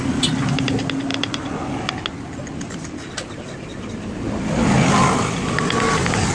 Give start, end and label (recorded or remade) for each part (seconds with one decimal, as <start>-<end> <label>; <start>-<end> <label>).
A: 0.0-6.3 recorded